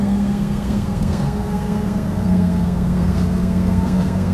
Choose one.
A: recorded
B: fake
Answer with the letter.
B